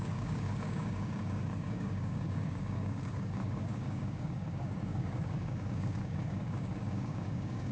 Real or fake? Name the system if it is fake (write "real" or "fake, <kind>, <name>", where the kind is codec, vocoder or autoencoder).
fake, codec, DAC